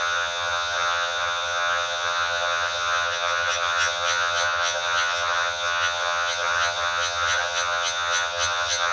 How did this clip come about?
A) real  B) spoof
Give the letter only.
B